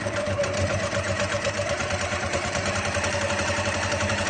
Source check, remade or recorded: remade